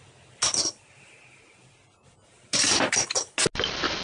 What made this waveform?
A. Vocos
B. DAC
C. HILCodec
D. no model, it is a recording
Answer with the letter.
D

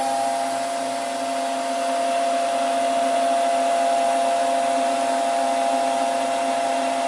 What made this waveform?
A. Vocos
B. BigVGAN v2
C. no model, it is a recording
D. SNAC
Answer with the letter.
C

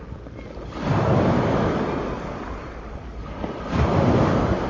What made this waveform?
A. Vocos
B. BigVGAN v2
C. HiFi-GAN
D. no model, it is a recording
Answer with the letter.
D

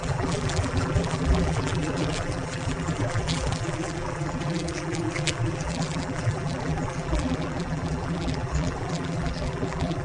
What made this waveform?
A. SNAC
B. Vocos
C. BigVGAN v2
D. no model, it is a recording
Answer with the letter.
C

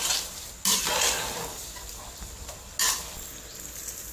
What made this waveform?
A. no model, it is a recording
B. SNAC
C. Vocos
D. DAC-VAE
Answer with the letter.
A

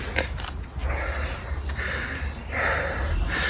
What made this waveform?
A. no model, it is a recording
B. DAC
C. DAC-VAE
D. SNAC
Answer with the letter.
A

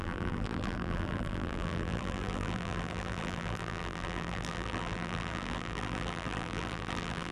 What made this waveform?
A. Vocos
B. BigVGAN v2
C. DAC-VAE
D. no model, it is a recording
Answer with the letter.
B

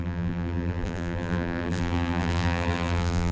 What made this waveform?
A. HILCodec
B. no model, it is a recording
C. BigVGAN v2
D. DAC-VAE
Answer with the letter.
C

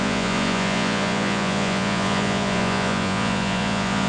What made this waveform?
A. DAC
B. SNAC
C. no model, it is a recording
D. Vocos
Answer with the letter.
D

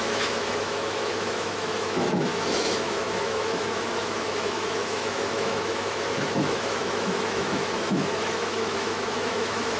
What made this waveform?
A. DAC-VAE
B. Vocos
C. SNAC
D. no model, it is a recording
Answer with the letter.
A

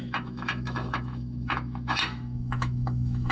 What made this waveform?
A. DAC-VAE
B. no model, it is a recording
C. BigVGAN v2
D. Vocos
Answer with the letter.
A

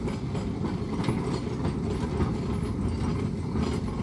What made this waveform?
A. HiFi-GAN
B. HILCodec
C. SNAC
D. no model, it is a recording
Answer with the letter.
D